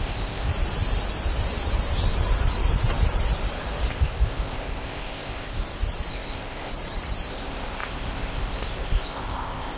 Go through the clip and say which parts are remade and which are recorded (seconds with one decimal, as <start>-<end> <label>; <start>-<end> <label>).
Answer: 0.0-0.5 remade; 0.5-3.9 recorded; 3.9-5.6 remade; 5.6-6.1 recorded; 6.1-6.7 remade; 6.7-7.3 recorded; 7.3-9.8 remade